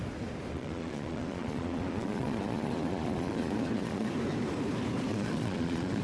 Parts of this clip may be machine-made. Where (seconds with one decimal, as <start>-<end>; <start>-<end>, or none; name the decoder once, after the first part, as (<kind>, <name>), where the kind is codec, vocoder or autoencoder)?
0.5-4.1 (vocoder, Vocos); 5.1-6.0